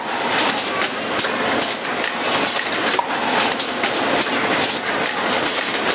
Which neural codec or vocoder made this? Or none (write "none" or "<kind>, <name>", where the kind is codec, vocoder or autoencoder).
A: none